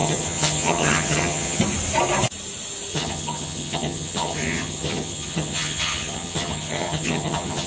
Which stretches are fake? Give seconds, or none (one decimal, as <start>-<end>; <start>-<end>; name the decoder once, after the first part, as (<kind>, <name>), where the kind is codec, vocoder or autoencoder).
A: 0.0-1.6 (vocoder, HiFi-GAN); 2.9-7.7